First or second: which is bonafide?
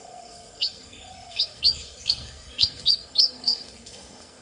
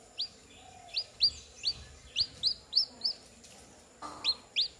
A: second